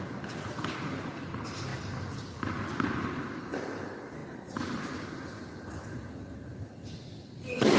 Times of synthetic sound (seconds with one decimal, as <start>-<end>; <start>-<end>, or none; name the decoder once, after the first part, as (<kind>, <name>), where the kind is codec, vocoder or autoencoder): none